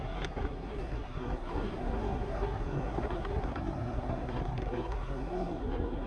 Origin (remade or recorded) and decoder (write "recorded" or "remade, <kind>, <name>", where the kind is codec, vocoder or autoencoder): remade, codec, SNAC